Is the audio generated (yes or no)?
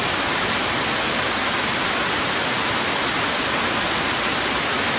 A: no